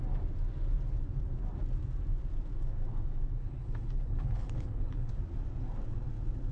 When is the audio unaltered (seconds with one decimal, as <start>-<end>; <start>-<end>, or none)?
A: 0.0-3.4; 5.1-6.5